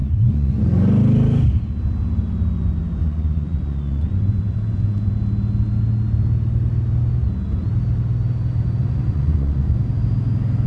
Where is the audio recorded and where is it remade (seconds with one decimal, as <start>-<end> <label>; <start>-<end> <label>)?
0.0-0.6 remade; 0.6-3.0 recorded; 3.0-5.1 remade; 5.1-8.8 recorded; 8.8-9.8 remade; 9.8-10.7 recorded